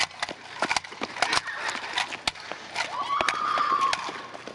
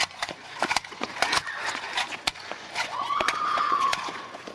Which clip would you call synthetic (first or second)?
second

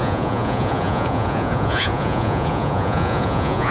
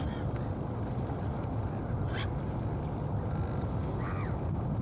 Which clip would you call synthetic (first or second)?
first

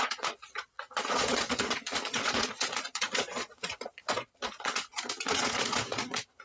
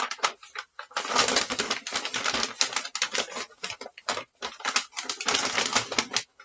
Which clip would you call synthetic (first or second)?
first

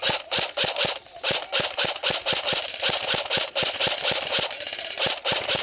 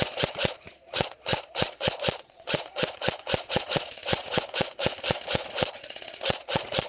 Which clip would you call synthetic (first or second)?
second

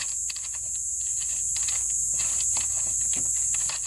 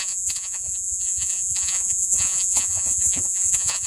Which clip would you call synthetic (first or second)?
second